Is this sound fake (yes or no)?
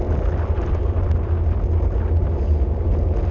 no